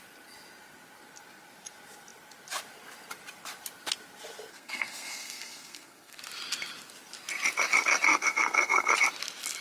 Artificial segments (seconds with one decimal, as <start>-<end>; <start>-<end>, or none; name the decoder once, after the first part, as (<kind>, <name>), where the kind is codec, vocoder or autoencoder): 4.5-6.2 (codec, SNAC); 8.1-8.9